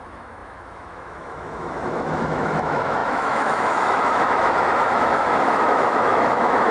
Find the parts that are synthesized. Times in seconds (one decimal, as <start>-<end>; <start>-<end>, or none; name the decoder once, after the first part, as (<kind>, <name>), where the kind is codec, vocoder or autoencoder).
0.0-6.7 (autoencoder, DAC-VAE)